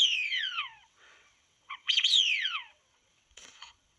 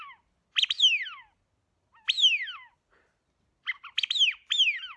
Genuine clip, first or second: second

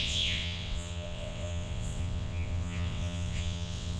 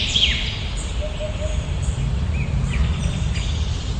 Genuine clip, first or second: second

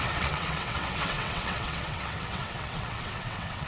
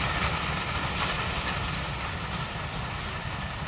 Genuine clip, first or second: second